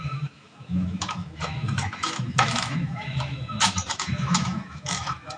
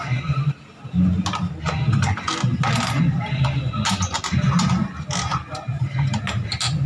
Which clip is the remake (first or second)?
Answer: first